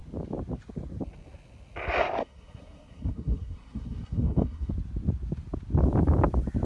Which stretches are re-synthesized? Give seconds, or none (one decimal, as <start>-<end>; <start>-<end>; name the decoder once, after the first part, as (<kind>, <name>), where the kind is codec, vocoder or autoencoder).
2.2-4.7 (codec, SNAC)